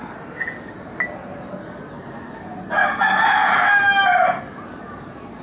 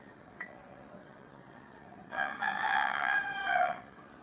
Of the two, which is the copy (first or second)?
second